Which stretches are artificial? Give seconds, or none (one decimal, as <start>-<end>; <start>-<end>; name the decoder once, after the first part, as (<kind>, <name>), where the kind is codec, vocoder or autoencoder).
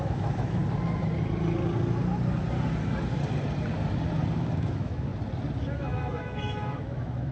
0.0-0.6 (autoencoder, DAC-VAE); 4.4-5.1; 5.7-7.3